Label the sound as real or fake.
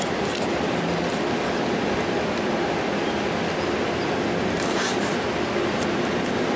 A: real